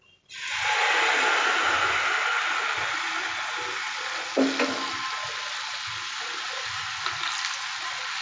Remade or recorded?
recorded